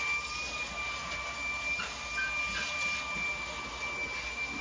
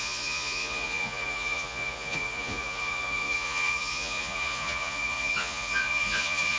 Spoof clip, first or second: second